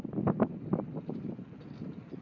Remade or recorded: recorded